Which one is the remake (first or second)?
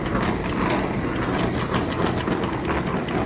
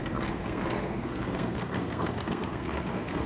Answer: second